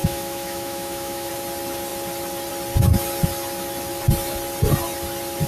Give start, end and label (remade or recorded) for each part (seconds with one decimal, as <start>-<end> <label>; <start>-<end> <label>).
0.0-1.3 remade; 1.3-5.5 recorded